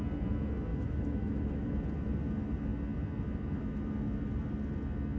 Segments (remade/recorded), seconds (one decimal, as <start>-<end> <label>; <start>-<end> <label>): 0.0-0.7 recorded; 0.7-1.7 remade; 1.7-5.2 recorded